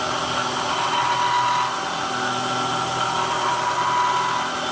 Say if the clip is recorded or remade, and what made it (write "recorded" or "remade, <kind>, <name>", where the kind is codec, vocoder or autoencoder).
recorded